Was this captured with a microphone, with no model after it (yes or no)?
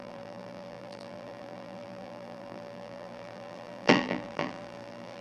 no